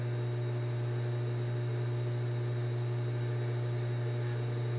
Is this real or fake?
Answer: real